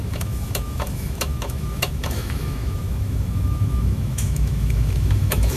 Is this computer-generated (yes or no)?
yes